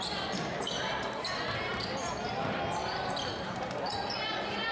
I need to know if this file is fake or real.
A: real